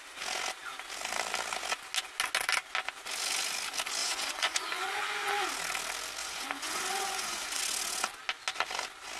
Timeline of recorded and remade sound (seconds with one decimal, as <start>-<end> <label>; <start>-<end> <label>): 0.0-4.0 recorded; 4.0-5.3 remade; 5.3-6.2 recorded; 6.2-7.6 remade; 7.6-9.2 recorded